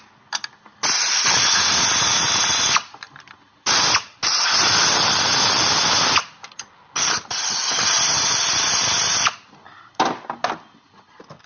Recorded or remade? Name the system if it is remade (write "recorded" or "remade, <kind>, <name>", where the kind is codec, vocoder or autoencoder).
recorded